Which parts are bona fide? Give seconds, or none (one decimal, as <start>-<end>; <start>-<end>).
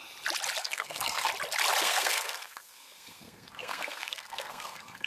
0.0-0.6; 1.3-1.8